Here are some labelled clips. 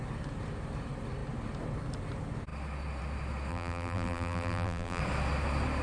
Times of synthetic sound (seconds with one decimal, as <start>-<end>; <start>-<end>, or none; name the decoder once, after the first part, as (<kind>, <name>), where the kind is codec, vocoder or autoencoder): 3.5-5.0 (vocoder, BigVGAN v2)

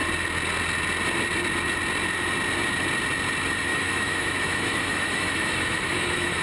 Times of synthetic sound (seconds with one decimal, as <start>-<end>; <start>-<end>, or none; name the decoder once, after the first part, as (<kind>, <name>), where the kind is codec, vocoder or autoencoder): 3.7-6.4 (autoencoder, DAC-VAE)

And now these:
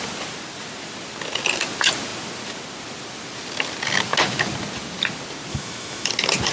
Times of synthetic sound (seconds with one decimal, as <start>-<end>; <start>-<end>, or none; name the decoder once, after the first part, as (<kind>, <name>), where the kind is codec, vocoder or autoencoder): 5.5-6.1 (autoencoder, DAC-VAE)

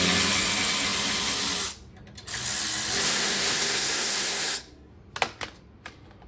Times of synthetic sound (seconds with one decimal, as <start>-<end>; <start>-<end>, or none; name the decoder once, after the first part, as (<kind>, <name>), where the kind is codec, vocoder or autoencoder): 3.0-4.9 (codec, SNAC)

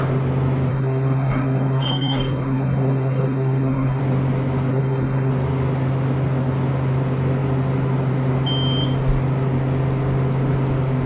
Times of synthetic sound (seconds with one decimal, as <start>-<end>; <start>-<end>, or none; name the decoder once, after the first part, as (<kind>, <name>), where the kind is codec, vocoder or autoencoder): 0.7-4.0 (codec, SNAC); 4.7-5.3

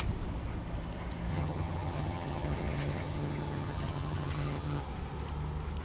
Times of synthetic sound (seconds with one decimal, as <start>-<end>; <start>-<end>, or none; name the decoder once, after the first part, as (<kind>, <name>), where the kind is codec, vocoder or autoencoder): 1.3-4.8 (vocoder, HiFi-GAN)

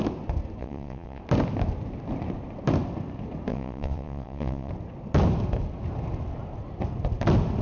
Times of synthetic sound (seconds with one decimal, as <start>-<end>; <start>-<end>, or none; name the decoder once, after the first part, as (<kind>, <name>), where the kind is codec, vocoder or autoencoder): 0.6-1.2 (vocoder, WaveNeXt); 3.5-4.7